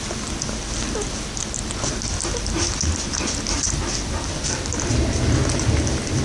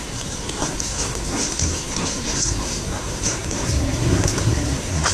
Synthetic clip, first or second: second